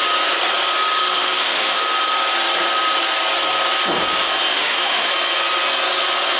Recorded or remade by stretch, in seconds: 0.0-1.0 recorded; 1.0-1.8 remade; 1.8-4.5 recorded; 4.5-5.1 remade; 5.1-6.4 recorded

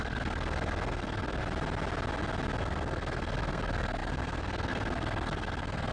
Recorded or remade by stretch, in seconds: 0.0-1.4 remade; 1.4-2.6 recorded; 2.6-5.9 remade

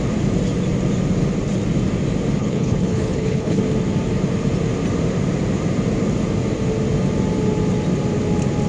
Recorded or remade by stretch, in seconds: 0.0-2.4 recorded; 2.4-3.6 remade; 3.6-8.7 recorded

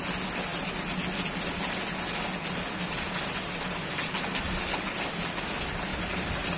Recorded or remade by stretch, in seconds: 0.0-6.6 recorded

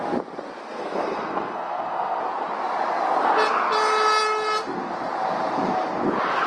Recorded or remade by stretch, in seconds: 0.0-0.6 recorded; 0.6-2.2 remade; 2.2-6.5 recorded